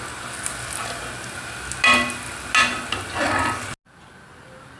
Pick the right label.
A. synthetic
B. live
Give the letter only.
B